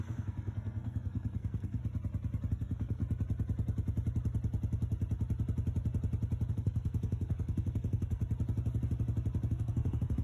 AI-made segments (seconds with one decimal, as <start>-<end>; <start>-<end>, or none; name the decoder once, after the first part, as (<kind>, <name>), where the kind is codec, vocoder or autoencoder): 0.0-1.8 (codec, SNAC); 2.5-3.0; 6.5-8.2; 9.5-10.2